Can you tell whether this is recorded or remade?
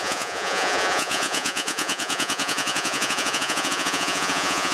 remade